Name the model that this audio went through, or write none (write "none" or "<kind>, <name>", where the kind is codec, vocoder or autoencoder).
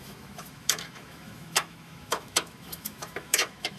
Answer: autoencoder, DAC-VAE